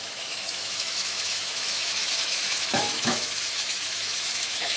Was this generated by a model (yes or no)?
yes